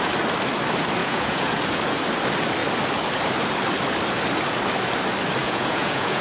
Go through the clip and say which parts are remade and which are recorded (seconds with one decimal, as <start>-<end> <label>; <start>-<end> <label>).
0.0-1.0 recorded; 1.0-1.6 remade; 1.6-5.4 recorded; 5.4-6.2 remade